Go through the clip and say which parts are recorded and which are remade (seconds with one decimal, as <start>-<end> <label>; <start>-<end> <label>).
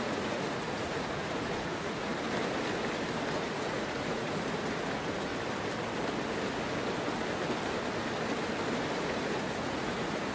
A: 0.0-2.1 remade; 2.1-3.3 recorded; 3.3-5.3 remade; 5.3-9.0 recorded; 9.0-10.3 remade